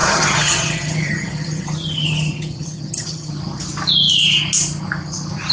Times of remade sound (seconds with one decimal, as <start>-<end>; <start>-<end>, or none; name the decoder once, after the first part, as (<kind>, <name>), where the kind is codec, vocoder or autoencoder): 0.0-3.3 (vocoder, HiFi-GAN)